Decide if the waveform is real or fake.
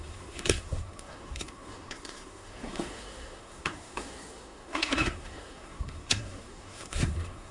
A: fake